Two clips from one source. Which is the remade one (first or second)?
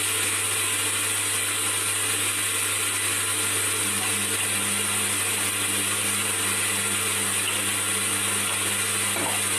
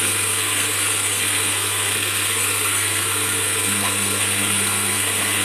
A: second